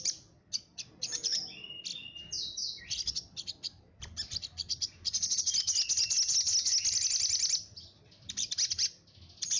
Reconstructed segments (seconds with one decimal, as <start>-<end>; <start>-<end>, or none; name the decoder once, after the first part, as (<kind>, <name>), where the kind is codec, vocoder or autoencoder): none